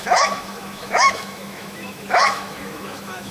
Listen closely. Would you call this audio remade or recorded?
remade